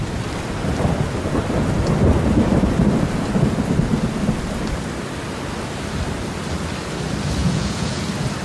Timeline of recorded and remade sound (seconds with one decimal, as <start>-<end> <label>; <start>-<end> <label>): 0.0-7.4 recorded; 7.4-8.0 remade; 8.0-8.4 recorded